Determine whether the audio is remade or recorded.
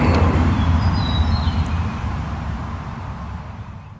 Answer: remade